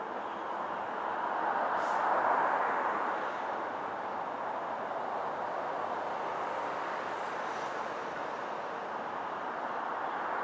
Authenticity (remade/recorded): recorded